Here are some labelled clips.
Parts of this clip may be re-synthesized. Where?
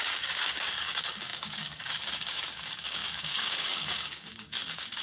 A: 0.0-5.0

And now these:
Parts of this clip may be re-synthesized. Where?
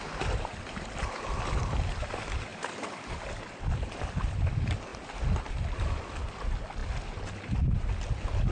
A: none